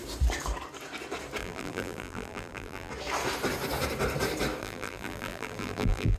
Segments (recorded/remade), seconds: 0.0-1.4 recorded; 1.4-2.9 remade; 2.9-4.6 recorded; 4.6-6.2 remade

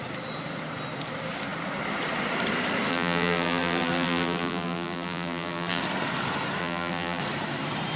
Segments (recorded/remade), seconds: 0.0-2.9 recorded; 2.9-5.8 remade; 5.8-6.6 recorded; 6.6-7.2 remade; 7.2-8.0 recorded

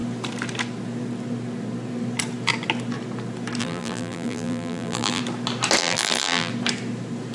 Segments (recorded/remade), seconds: 0.0-3.6 recorded; 3.6-5.2 remade; 5.2-5.8 recorded; 5.8-6.5 remade; 6.5-7.3 recorded

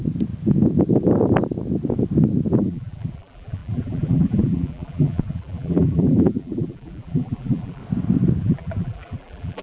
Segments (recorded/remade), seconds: 0.0-2.5 recorded; 2.5-7.8 remade; 7.8-8.4 recorded; 8.4-9.6 remade

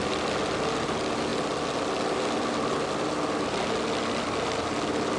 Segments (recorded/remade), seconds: 0.0-5.2 recorded

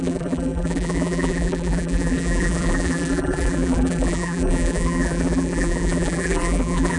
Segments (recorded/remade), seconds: 0.0-7.0 remade